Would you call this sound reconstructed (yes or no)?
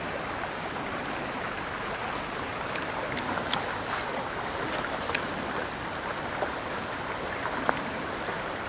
no